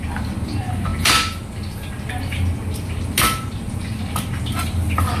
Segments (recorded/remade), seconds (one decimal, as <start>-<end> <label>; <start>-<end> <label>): 0.0-5.2 recorded